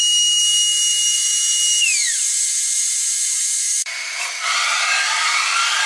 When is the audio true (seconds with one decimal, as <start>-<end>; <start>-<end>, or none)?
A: 0.0-0.9; 4.4-5.9